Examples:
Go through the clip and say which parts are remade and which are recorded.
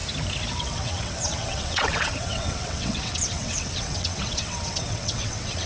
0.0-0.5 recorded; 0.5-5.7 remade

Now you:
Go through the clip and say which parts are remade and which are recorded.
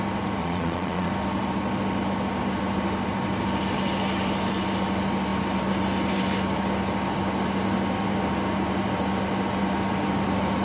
0.0-0.4 recorded; 0.4-1.1 remade; 1.1-10.6 recorded